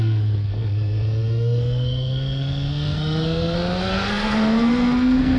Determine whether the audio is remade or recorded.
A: remade